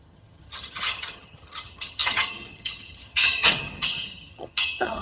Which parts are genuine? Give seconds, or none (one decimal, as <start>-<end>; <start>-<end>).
none